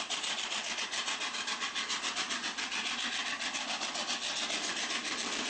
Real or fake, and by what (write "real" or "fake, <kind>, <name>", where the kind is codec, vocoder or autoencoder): real